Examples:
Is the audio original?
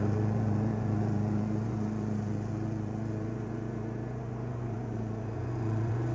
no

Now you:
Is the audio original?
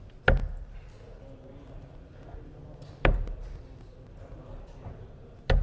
yes